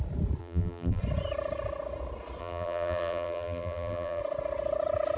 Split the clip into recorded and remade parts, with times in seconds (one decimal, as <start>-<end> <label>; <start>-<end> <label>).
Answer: 0.0-0.4 recorded; 0.4-1.0 remade; 1.0-2.4 recorded; 2.4-4.2 remade; 4.2-5.2 recorded